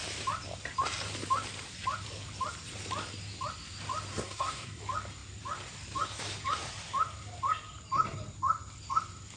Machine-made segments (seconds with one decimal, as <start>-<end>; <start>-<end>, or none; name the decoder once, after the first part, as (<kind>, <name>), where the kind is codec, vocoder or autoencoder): 4.1-4.8 (codec, SNAC)